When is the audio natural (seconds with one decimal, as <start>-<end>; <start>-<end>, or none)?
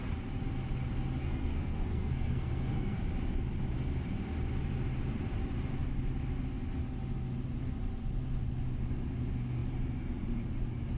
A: 0.0-1.2; 3.0-11.0